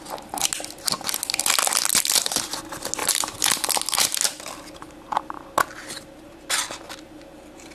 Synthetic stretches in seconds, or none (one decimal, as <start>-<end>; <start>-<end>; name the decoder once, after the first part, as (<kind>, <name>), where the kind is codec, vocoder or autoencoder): 3.0-3.7 (vocoder, BigVGAN v2)